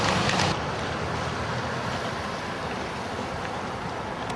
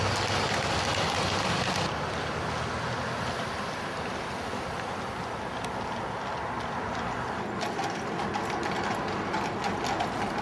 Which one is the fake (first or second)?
first